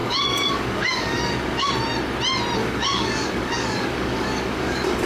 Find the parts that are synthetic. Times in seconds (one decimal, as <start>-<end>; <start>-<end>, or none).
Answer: 0.0-1.7; 2.6-5.1

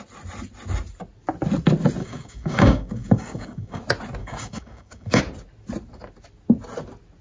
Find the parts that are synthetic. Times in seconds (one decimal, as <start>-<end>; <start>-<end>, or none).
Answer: 2.0-3.8; 4.2-5.2

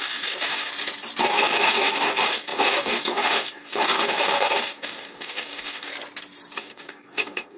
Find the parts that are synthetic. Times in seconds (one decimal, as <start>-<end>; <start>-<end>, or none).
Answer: 0.0-0.7; 1.2-5.9; 6.6-7.6